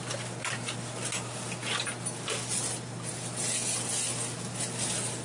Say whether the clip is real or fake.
real